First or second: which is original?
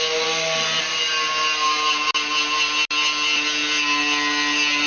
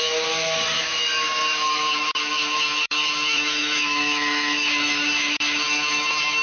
first